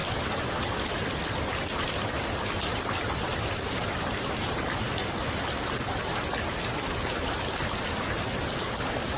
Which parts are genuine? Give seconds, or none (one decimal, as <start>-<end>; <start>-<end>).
0.0-9.2